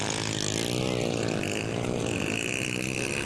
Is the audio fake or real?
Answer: real